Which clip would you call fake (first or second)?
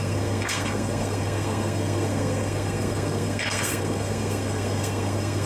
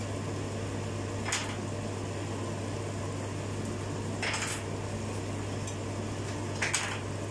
first